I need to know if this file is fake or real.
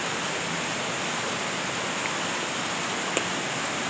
real